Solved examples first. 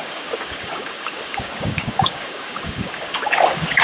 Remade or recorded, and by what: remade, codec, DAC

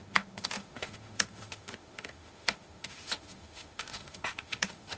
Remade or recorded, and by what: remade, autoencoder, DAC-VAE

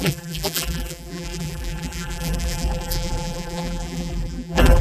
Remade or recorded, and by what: remade, vocoder, BigVGAN v2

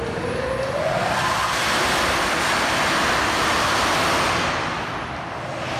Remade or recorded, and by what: recorded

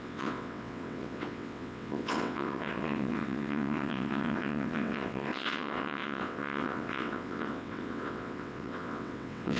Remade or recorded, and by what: remade, vocoder, WaveNeXt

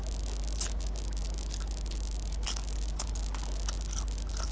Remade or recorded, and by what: recorded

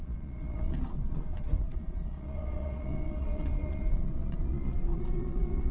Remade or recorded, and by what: remade, vocoder, Vocos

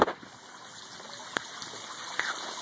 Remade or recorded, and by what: recorded